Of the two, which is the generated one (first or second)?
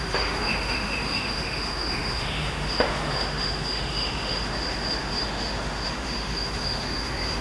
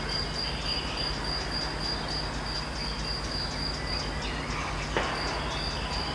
first